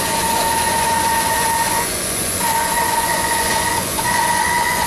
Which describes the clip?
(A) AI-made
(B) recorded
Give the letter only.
A